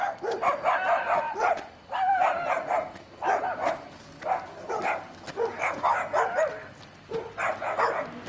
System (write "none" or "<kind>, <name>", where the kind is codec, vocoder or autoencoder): none